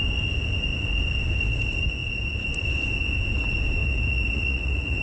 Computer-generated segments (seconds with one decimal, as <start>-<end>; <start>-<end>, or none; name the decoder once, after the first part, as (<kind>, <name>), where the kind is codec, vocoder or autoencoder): 3.8-5.0 (vocoder, Vocos)